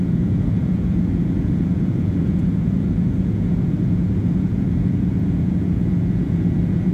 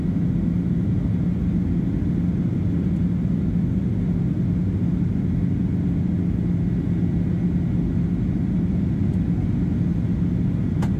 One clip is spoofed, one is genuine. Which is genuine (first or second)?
second